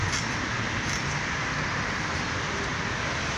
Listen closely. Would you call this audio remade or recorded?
recorded